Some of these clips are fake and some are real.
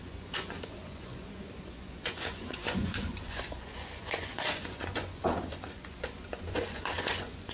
fake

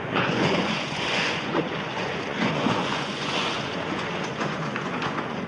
fake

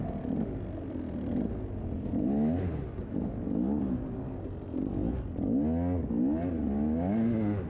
real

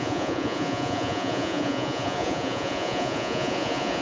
fake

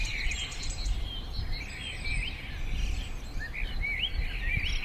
real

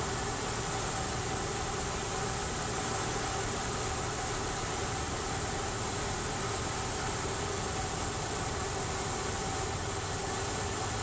real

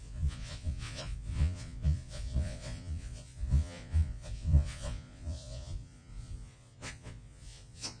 fake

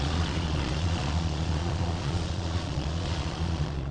fake